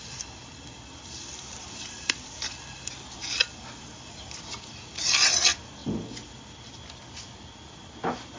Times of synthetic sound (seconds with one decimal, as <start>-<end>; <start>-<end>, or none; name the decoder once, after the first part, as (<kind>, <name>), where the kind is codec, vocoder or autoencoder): 0.0-3.2 (vocoder, BigVGAN v2); 3.8-5.8

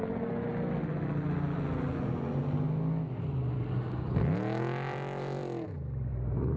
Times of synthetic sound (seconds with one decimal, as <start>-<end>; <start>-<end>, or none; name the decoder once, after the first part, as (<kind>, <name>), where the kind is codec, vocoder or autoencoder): none

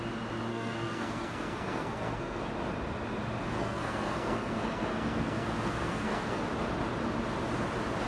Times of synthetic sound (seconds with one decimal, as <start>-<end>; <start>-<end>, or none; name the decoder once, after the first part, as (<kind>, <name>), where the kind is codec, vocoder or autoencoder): 0.5-2.5 (codec, SNAC); 3.6-6.4

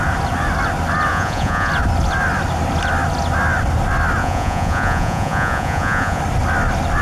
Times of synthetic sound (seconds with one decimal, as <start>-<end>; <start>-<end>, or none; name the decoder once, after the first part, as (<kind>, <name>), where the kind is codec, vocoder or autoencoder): 1.1-1.7 (vocoder, Vocos); 4.2-6.2

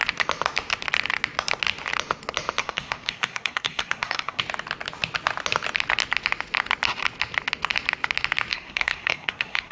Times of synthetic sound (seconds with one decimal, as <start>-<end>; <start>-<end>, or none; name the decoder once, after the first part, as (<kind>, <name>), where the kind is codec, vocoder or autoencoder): 2.6-4.4 (codec, SNAC); 8.5-9.7